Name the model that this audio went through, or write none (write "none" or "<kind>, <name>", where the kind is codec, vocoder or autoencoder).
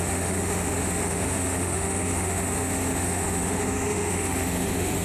autoencoder, DAC-VAE